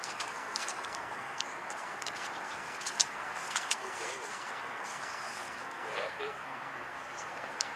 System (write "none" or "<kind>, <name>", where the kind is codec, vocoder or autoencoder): codec, SNAC